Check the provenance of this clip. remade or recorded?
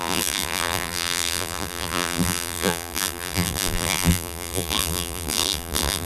remade